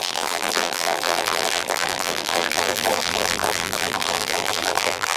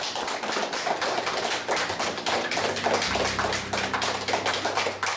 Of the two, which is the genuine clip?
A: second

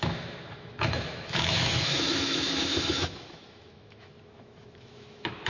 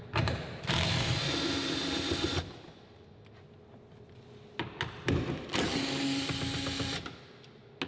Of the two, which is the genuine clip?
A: second